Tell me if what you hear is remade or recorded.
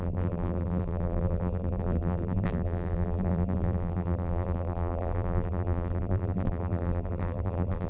remade